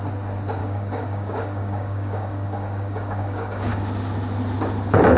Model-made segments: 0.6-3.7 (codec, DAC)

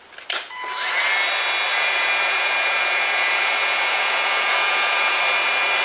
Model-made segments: 1.7-5.2 (vocoder, Vocos)